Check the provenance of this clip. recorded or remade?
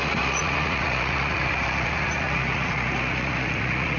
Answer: remade